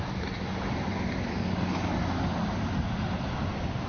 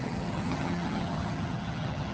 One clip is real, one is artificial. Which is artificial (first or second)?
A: second